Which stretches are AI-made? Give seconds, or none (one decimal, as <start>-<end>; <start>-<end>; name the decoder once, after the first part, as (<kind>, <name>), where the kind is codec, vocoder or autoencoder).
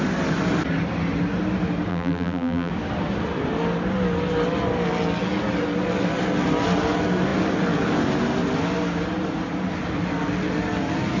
1.9-2.7 (vocoder, BigVGAN v2)